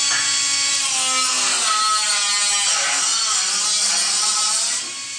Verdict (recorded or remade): recorded